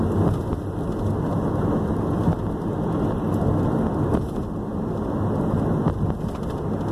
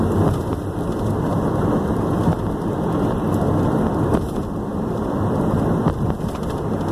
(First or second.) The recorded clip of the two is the first